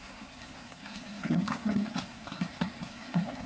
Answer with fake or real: fake